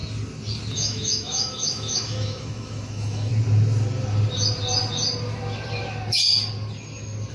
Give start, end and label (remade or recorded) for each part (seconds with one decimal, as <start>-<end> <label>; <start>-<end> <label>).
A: 0.0-0.7 recorded; 0.7-3.3 remade; 3.3-7.3 recorded